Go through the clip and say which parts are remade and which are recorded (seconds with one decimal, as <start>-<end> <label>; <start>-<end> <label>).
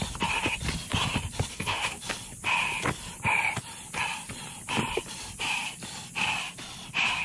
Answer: 0.0-1.5 recorded; 1.5-2.0 remade; 2.0-7.2 recorded